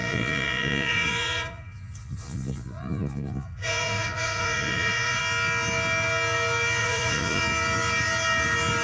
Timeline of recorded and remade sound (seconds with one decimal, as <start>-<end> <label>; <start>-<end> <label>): 0.0-5.2 remade; 5.2-6.8 recorded; 6.8-7.4 remade; 7.4-8.8 recorded

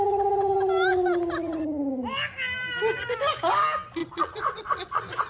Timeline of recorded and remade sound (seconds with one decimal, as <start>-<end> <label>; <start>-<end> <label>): 0.0-4.0 recorded; 4.0-5.3 remade